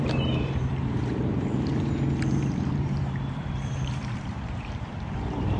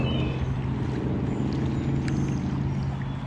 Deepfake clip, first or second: first